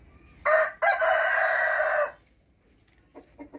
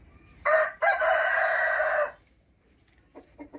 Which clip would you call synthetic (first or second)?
second